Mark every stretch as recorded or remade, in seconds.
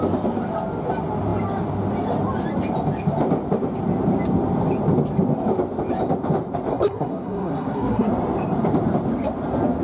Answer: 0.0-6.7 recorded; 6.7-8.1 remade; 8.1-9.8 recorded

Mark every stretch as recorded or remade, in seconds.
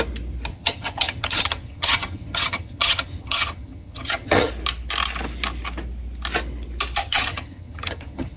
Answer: 0.0-0.5 recorded; 0.5-4.5 remade; 4.5-7.0 recorded; 7.0-8.4 remade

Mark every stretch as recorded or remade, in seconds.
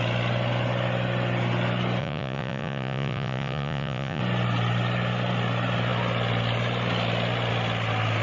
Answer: 0.0-2.0 recorded; 2.0-4.2 remade; 4.2-8.2 recorded